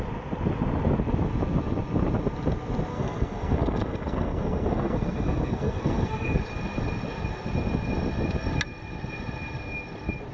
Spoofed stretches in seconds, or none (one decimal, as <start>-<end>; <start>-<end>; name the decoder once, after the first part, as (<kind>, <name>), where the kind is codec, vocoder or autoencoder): 2.9-6.4 (codec, SNAC)